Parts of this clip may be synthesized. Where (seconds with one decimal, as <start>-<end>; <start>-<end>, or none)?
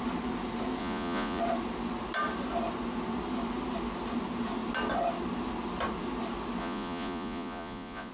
0.8-1.4; 6.6-8.1